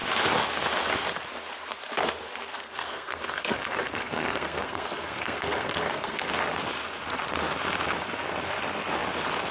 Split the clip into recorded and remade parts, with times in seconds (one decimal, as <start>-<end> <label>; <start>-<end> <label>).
0.0-2.5 recorded; 2.5-6.3 remade; 6.3-9.5 recorded

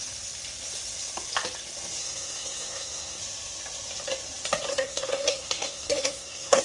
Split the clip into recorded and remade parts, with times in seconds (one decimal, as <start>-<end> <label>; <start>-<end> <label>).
0.0-2.0 recorded; 2.0-3.2 remade; 3.2-4.7 recorded; 4.7-6.6 remade